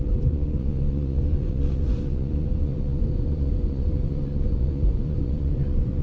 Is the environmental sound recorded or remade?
remade